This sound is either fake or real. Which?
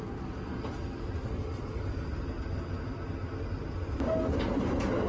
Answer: real